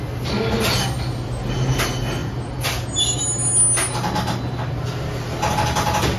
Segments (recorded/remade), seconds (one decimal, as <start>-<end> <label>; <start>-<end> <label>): 0.0-2.2 recorded; 2.2-3.2 remade; 3.2-6.2 recorded